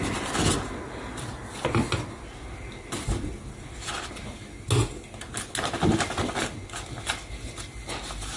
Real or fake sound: real